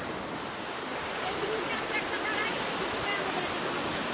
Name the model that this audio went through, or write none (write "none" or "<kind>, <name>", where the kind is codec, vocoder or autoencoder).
none